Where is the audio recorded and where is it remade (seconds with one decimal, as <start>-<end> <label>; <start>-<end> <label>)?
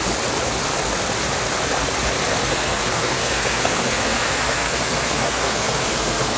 0.0-2.5 recorded; 2.5-6.4 remade